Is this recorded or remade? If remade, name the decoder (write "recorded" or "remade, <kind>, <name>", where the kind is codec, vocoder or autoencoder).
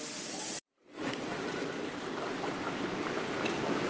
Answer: recorded